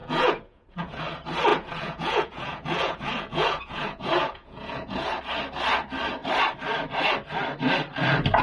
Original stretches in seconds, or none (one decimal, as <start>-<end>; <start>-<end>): 1.0-1.5; 5.2-8.4